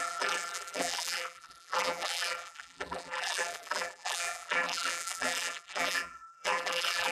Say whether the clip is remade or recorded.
remade